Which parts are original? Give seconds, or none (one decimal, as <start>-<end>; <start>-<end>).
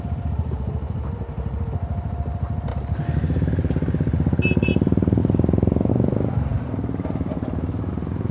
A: 2.7-4.7; 5.2-5.9